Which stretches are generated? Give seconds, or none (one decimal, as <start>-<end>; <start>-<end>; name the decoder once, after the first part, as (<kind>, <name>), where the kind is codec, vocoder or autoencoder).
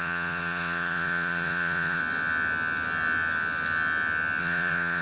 0.0-2.0 (vocoder, Vocos); 4.4-5.0